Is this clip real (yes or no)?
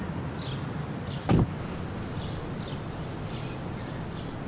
yes